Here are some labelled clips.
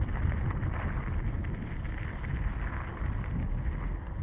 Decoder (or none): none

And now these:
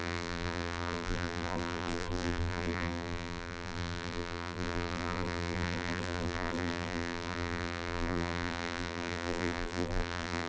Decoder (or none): vocoder, BigVGAN v2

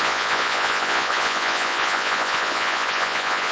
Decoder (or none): vocoder, Vocos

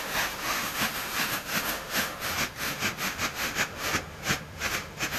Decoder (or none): autoencoder, DAC-VAE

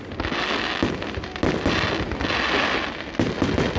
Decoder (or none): none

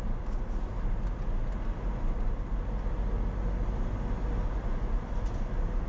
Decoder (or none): none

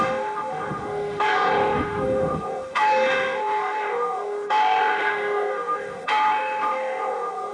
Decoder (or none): autoencoder, DAC-VAE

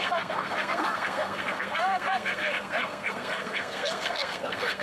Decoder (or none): codec, SNAC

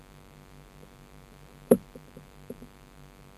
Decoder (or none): vocoder, BigVGAN v2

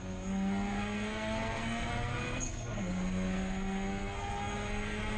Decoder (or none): codec, SNAC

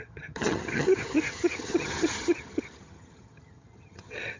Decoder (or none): vocoder, HiFi-GAN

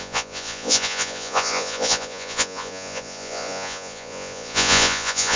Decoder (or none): vocoder, Vocos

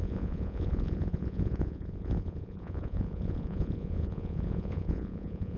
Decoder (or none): vocoder, Vocos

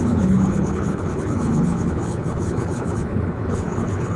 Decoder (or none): codec, HILCodec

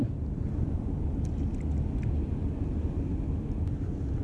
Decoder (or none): none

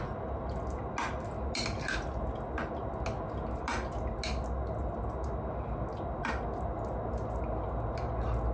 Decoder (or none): none